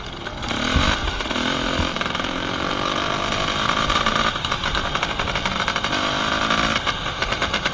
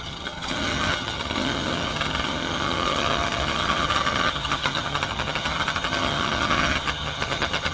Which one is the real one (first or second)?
first